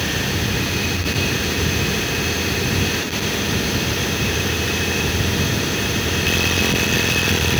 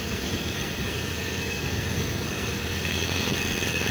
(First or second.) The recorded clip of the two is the first